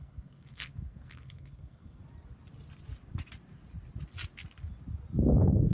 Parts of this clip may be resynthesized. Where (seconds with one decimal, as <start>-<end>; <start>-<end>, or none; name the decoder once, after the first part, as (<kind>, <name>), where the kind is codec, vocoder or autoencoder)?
0.0-2.0 (codec, SNAC); 5.2-5.7